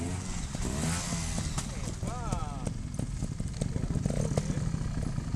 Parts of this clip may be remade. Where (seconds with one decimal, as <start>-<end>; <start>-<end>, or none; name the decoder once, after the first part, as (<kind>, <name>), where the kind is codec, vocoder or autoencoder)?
none